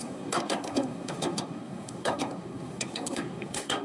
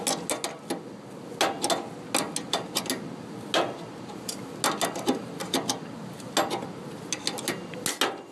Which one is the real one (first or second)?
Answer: second